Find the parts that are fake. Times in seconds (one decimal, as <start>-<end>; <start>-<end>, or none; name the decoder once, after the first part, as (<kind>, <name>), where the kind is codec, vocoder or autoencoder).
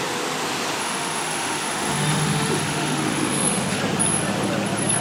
0.8-3.8 (autoencoder, DAC-VAE)